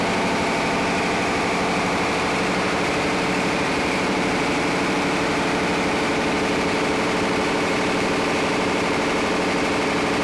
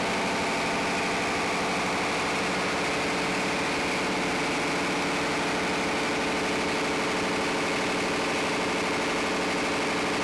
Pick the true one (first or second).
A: second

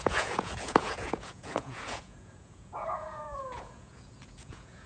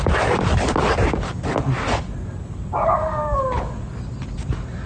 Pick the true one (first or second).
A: second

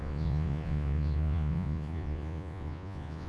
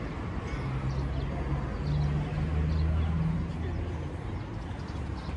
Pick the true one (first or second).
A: second